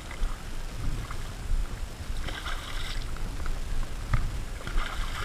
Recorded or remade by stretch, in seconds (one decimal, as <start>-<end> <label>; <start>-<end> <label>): 0.0-1.6 recorded; 1.6-2.9 remade; 2.9-5.2 recorded